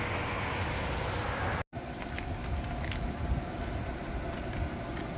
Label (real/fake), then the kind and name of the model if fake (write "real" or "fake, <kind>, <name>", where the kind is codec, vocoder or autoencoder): real